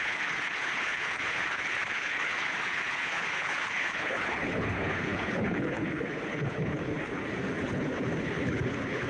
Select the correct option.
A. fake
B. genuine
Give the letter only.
A